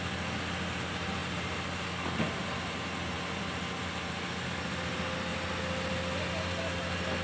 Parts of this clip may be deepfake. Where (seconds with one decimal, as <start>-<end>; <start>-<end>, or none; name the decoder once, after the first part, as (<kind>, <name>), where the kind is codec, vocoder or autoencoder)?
1.2-2.7 (vocoder, BigVGAN v2)